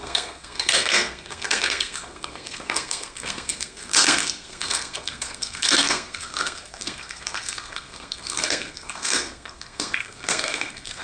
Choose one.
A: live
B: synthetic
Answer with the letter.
B